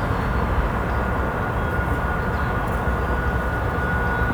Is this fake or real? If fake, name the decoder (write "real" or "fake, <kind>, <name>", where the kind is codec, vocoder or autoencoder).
real